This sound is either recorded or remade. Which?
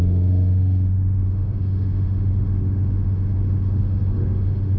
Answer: remade